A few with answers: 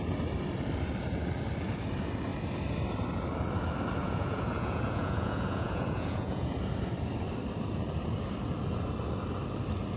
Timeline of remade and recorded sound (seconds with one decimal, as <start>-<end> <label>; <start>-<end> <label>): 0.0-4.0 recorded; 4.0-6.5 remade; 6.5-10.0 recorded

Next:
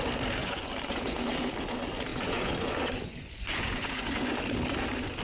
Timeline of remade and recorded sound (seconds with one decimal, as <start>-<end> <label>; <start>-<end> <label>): 0.0-0.4 recorded; 0.4-1.3 remade; 1.3-2.1 recorded; 2.1-4.3 remade; 4.3-5.2 recorded

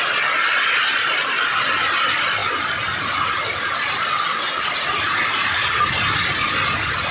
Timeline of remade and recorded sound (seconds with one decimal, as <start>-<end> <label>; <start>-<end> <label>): 0.0-7.1 recorded

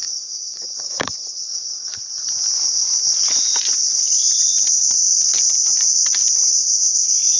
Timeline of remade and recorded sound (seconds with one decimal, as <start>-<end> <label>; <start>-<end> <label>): 0.0-2.0 remade; 2.0-7.4 recorded

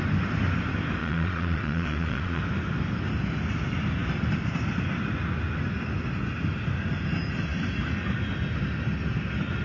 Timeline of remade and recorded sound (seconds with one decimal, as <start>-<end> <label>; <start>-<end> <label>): 0.0-1.0 recorded; 1.0-2.4 remade; 2.4-9.6 recorded